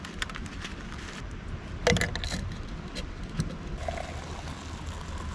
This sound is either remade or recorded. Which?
recorded